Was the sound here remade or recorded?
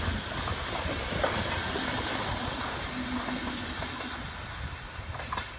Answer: recorded